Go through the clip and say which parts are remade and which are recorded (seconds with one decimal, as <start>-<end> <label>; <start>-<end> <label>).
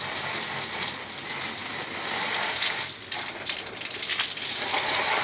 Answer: 0.0-5.2 recorded